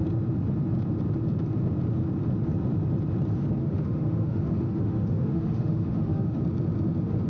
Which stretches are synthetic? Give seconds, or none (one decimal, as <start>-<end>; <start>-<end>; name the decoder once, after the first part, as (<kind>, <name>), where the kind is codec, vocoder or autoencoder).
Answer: 3.6-6.4 (autoencoder, DAC-VAE)